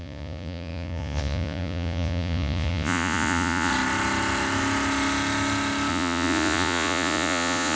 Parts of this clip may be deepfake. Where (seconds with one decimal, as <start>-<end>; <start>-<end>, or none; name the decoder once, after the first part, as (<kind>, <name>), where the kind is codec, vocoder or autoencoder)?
0.0-3.7 (vocoder, Vocos); 5.9-7.8

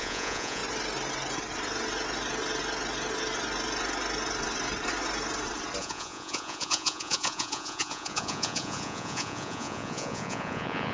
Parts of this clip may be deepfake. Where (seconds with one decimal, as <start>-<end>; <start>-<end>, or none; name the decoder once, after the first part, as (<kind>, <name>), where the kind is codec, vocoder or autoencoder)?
0.0-0.6 (vocoder, Vocos); 5.8-10.9

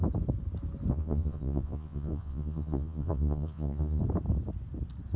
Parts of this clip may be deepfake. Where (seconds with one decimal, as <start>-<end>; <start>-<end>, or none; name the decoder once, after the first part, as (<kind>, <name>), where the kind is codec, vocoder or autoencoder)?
0.9-4.0 (vocoder, Vocos)

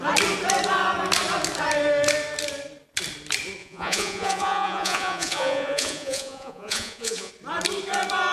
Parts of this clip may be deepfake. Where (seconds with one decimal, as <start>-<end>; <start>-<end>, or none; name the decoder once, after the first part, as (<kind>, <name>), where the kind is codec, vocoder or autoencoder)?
3.6-7.3 (vocoder, Vocos)

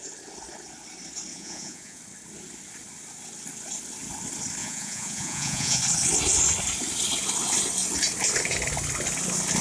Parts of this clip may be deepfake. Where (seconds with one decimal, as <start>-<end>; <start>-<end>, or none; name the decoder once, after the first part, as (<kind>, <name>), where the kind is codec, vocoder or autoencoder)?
1.3-2.0 (vocoder, Vocos); 4.6-5.8

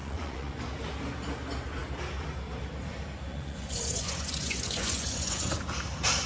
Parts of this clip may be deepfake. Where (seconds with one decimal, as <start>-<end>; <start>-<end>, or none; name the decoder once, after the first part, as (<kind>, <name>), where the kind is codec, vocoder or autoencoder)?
0.0-0.6 (vocoder, Vocos); 3.3-5.7